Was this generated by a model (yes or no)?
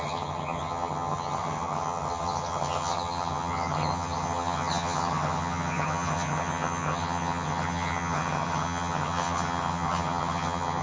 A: yes